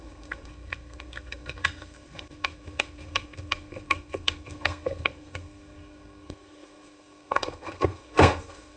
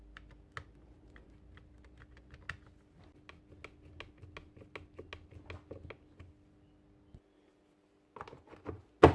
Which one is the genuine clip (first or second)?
second